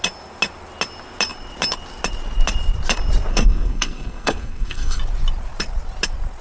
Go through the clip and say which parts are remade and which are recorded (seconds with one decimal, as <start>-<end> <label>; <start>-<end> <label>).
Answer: 0.0-3.3 recorded; 3.3-5.0 remade; 5.0-6.4 recorded